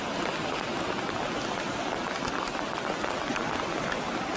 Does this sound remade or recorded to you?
recorded